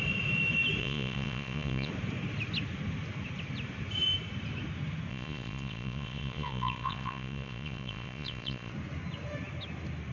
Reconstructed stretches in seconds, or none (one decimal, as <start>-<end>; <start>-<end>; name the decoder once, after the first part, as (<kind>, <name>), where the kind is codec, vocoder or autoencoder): 0.8-1.9 (vocoder, Vocos); 5.1-8.7